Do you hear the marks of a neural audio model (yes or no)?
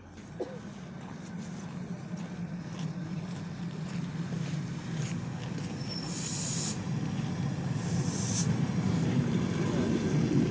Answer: no